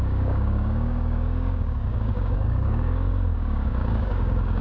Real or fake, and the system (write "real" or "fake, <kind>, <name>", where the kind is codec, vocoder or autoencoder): fake, codec, DAC